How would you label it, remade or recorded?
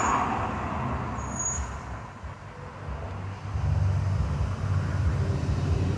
recorded